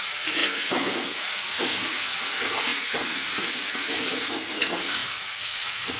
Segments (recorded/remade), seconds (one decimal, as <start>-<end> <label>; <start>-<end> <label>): 0.0-6.0 remade